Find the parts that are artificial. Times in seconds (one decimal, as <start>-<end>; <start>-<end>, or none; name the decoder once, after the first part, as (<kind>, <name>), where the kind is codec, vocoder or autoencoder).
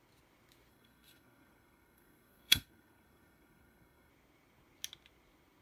0.7-4.1 (codec, SNAC)